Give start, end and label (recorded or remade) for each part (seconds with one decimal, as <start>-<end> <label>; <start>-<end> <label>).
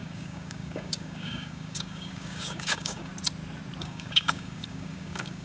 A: 0.0-3.1 remade; 3.1-3.8 recorded; 3.8-5.4 remade